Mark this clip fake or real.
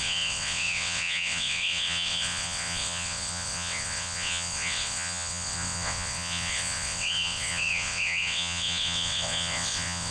fake